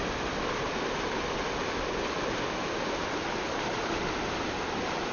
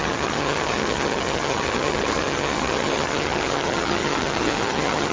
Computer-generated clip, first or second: second